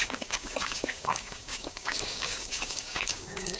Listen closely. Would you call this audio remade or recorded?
remade